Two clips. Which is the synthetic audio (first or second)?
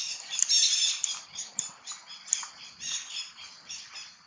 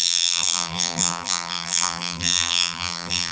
second